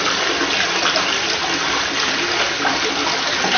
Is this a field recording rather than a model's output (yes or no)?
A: yes